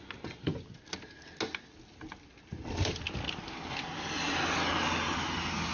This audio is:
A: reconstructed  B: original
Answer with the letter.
B